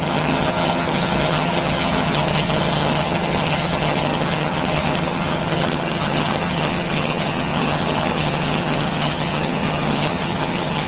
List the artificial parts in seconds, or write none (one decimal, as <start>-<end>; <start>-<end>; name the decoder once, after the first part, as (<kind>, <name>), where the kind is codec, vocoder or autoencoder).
0.0-10.9 (vocoder, HiFi-GAN)